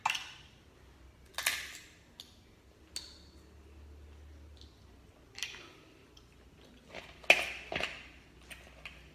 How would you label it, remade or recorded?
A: recorded